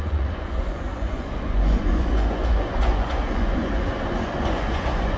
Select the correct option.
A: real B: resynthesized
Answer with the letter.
B